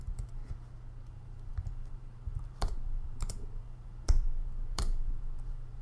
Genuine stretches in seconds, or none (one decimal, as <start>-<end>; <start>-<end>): 0.4-1.1